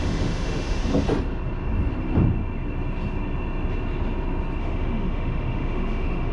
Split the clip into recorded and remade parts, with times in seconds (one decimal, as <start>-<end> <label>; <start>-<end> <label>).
0.0-0.8 remade; 0.8-4.6 recorded; 4.6-6.3 remade